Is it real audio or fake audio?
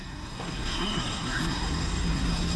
fake